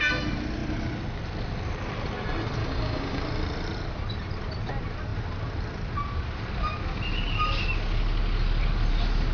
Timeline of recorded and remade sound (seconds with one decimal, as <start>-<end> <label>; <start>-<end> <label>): 0.0-2.6 recorded; 2.6-3.2 remade; 3.2-9.3 recorded